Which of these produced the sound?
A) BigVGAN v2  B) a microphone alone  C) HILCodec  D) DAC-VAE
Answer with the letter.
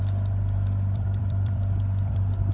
A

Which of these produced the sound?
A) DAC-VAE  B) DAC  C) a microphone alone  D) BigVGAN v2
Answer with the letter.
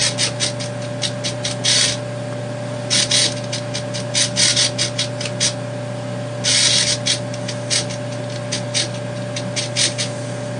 C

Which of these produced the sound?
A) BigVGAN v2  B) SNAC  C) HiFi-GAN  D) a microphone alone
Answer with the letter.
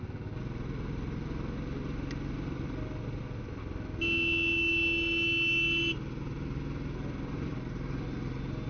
D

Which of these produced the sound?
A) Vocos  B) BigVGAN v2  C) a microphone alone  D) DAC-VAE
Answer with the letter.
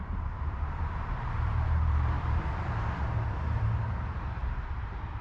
B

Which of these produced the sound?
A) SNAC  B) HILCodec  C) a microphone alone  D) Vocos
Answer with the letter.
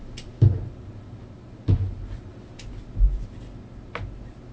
C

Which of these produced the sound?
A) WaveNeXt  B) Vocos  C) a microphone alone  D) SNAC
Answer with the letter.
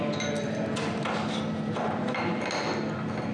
C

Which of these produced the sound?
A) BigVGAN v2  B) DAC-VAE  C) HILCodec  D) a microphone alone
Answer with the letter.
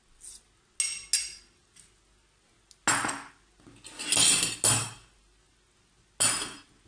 D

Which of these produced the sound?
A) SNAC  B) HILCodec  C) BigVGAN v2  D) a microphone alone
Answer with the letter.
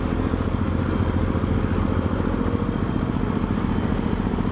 D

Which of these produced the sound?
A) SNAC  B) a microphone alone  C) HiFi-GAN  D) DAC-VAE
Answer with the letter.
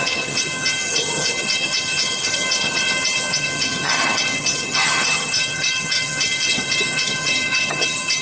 C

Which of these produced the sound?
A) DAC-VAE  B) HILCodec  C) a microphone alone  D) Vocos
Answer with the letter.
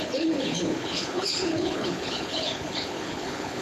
B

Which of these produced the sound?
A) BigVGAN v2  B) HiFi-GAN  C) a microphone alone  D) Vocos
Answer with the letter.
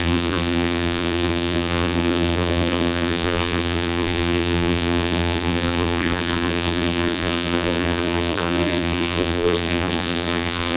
A